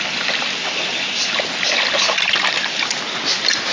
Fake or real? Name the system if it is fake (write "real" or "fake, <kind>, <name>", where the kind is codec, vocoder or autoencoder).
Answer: real